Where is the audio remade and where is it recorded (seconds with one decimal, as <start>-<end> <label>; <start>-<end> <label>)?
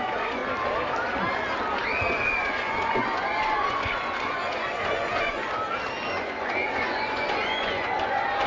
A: 0.0-0.4 remade; 0.4-2.1 recorded; 2.1-5.4 remade; 5.4-6.1 recorded; 6.1-8.5 remade